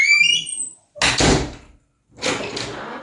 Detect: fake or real real